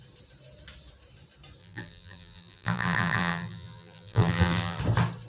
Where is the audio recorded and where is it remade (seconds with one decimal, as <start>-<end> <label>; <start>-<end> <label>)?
0.0-1.6 recorded; 1.6-4.8 remade; 4.8-5.3 recorded